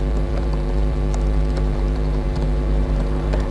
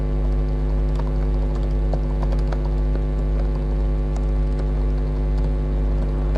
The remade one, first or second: first